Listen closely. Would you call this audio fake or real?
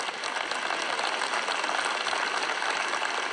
real